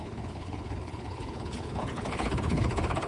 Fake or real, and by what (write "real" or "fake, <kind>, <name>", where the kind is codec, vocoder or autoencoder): fake, codec, HILCodec